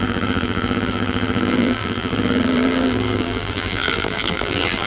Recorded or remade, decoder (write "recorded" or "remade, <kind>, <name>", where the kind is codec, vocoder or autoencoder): remade, vocoder, BigVGAN v2